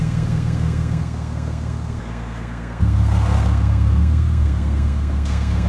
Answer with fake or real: fake